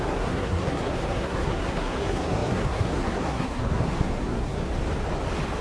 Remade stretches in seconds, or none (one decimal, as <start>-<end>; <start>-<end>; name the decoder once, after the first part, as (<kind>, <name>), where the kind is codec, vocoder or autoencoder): 0.0-4.7 (codec, SNAC)